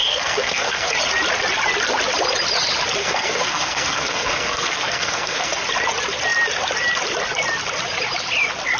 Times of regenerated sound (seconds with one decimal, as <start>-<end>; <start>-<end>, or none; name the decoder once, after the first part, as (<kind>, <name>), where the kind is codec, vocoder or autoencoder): 0.0-0.9 (codec, SNAC); 3.0-5.6